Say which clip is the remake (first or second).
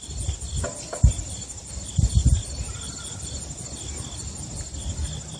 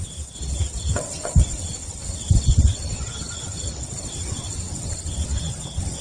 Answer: second